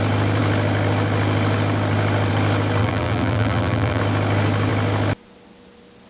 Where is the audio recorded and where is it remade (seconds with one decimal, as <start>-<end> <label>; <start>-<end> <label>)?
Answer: 0.0-2.8 recorded; 2.8-4.0 remade; 4.0-6.1 recorded